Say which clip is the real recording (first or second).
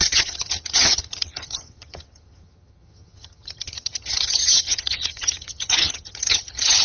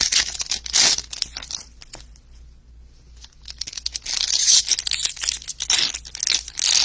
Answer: second